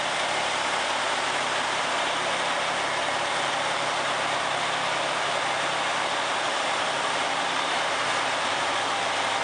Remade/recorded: recorded